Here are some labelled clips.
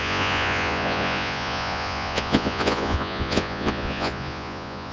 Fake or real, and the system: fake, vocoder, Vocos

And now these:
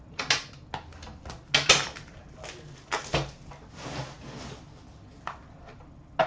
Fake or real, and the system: real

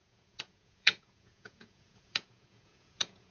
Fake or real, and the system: fake, vocoder, Vocos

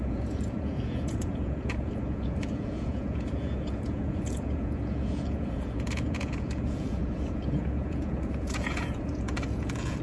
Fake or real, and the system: fake, vocoder, Vocos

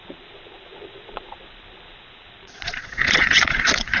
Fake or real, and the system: fake, vocoder, Vocos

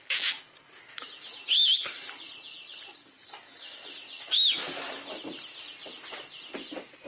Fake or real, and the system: real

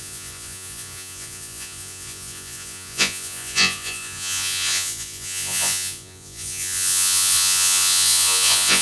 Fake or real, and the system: fake, vocoder, Vocos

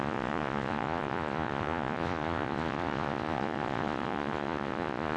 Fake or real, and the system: fake, vocoder, Vocos